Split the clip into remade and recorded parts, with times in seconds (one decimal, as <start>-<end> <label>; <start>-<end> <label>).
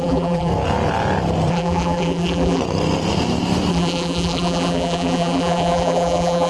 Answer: 0.0-0.5 remade; 0.5-1.5 recorded; 1.5-2.6 remade; 2.6-3.7 recorded; 3.7-6.5 remade